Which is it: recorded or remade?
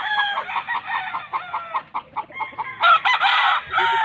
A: recorded